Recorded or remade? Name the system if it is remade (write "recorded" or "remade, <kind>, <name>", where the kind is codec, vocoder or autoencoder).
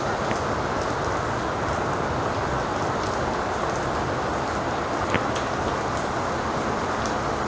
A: recorded